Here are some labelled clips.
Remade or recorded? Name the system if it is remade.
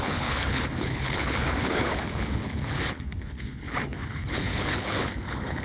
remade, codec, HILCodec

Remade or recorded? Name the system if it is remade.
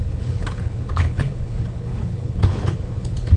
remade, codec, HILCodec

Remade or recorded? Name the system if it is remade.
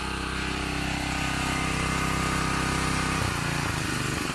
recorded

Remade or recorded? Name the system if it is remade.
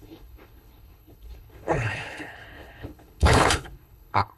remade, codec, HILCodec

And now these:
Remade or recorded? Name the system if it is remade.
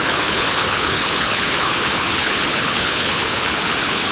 remade, codec, HILCodec